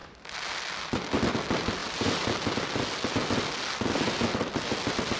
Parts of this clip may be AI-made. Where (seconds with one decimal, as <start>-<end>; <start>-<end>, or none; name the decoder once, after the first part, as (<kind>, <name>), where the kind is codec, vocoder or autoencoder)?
none